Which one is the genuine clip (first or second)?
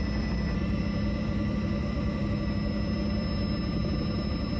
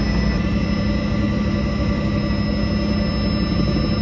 second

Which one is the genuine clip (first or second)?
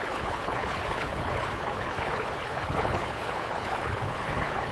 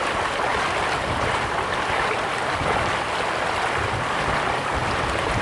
second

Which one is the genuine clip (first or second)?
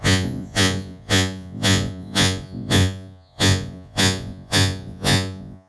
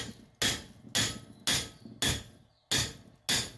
second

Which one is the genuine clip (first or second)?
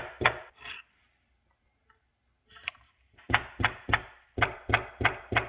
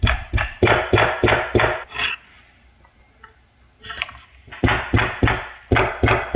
second